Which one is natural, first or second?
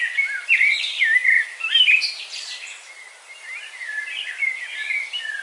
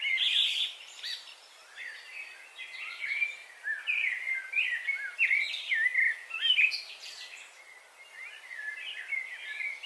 second